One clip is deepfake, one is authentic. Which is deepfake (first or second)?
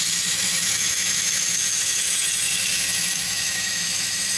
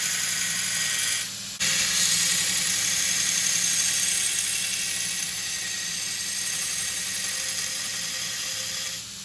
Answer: first